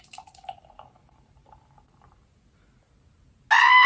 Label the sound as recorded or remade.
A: recorded